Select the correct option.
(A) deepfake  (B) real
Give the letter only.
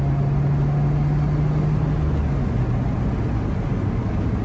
B